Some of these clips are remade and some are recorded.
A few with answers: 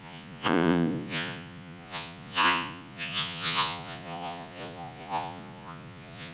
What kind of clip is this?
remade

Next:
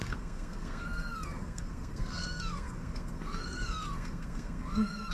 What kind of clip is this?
remade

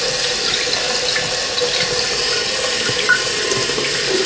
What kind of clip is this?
recorded